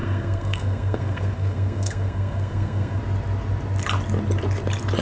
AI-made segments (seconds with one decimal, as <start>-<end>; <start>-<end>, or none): 0.0-3.0